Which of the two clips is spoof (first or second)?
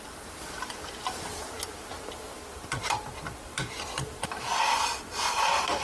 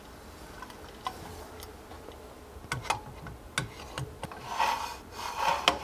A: first